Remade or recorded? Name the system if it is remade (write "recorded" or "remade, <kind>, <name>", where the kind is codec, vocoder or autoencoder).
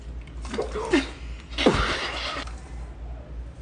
recorded